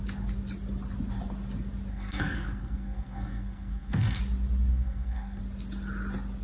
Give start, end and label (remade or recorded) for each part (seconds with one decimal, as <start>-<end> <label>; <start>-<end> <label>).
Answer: 0.0-1.9 recorded; 1.9-4.2 remade; 4.2-4.7 recorded; 4.7-5.4 remade; 5.4-6.4 recorded